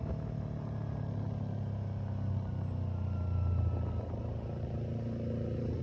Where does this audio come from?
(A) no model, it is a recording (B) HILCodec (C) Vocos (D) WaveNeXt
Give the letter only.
A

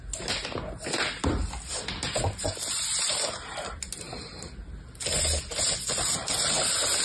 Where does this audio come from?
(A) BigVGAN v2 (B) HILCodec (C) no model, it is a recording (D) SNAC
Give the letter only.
C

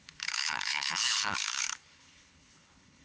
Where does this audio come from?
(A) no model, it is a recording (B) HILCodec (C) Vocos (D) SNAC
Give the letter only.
B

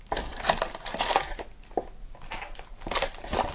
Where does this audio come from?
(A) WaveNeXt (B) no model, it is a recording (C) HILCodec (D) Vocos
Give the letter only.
B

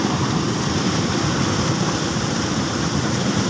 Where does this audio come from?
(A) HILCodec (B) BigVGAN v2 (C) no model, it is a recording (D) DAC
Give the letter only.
C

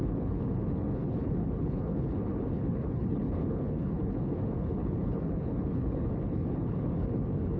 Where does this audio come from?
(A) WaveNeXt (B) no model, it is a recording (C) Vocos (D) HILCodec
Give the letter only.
D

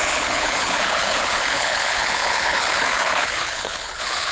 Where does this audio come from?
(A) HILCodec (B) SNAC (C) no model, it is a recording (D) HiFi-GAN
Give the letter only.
A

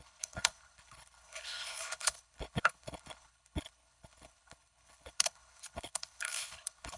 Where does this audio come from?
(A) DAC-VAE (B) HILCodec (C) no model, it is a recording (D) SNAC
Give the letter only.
B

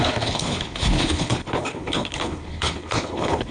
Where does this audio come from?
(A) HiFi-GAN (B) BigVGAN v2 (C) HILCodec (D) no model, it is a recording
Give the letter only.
C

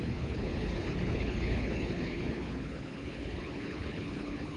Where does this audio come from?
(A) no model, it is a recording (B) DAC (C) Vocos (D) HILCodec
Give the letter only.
D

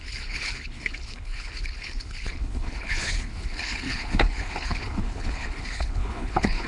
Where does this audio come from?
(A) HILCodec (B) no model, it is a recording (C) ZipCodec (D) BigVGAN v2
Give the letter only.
A